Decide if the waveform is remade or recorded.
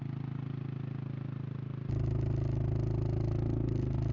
recorded